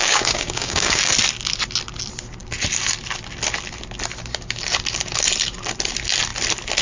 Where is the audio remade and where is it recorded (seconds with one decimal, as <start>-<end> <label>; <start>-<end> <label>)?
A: 0.0-1.1 remade; 1.1-6.8 recorded